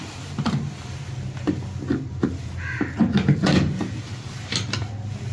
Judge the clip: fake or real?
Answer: real